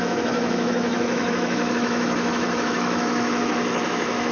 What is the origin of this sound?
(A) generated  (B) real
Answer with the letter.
A